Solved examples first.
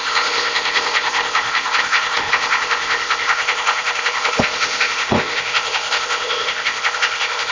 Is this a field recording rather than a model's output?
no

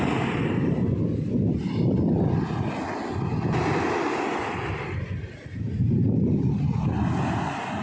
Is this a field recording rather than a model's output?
yes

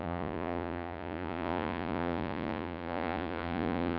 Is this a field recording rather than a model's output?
no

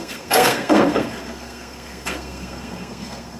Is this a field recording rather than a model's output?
no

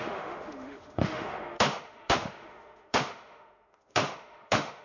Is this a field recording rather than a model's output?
no